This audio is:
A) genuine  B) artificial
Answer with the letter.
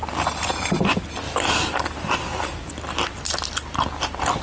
A